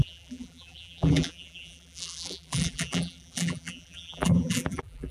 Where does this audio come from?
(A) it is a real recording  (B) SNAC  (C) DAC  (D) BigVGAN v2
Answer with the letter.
D